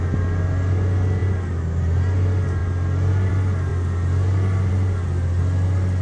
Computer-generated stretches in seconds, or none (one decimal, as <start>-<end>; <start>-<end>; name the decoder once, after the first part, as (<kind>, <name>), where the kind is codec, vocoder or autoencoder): none